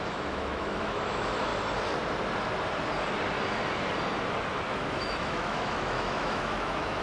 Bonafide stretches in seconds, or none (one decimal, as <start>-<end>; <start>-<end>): 1.5-4.7